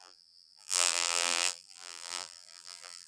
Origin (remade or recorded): remade